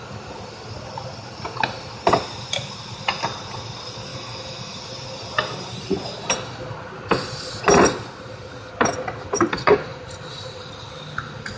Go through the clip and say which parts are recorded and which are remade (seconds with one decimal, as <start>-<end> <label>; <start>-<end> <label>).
0.0-4.1 recorded; 4.1-4.8 remade; 4.8-11.6 recorded